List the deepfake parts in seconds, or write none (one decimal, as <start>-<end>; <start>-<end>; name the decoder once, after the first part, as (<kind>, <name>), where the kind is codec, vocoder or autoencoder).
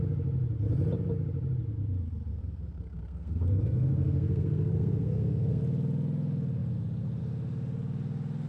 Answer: 2.3-5.6 (codec, SNAC)